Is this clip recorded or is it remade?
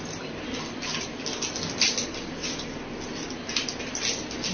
recorded